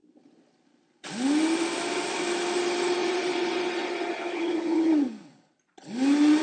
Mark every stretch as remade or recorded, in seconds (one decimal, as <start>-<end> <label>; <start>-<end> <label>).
0.0-3.0 recorded; 3.0-5.4 remade; 5.4-6.4 recorded